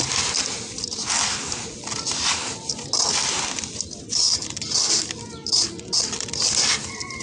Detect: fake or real real